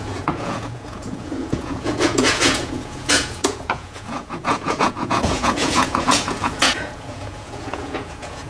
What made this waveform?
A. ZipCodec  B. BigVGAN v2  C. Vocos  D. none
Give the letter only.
C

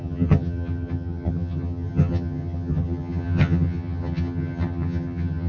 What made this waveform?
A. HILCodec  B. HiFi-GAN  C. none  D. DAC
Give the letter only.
B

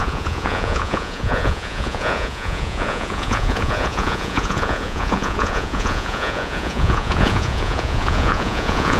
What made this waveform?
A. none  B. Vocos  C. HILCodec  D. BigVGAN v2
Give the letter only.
B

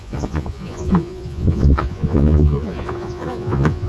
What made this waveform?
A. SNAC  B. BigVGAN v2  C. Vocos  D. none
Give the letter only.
C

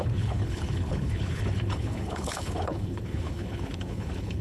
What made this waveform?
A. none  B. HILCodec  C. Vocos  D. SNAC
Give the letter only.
B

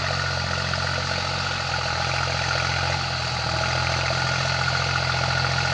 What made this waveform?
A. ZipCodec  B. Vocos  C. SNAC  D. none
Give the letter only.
D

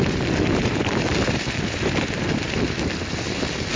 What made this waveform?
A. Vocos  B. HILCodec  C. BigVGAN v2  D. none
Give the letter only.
D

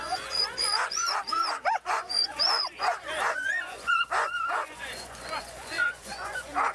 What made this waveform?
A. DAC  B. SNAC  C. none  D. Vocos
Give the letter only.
D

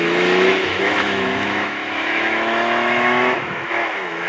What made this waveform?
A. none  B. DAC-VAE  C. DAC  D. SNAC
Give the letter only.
B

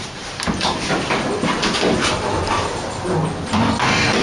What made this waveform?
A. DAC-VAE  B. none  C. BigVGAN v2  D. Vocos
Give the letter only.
C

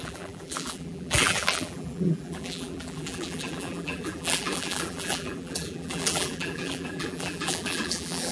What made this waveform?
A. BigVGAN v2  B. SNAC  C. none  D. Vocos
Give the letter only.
A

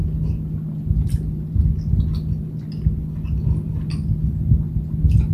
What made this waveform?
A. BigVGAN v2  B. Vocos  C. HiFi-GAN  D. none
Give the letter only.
D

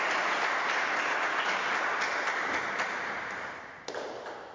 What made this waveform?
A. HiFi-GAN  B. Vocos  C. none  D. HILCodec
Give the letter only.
C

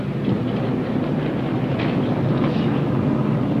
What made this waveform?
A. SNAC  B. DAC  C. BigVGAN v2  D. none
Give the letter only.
D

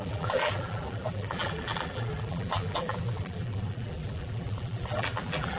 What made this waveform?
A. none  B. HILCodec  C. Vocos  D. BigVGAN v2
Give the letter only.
D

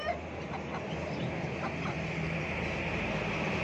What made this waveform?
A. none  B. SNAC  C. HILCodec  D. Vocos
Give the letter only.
A